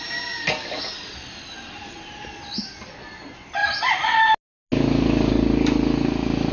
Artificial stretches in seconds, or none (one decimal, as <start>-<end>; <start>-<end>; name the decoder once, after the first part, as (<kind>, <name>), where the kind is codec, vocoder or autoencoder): none